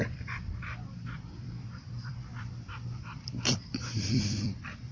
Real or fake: fake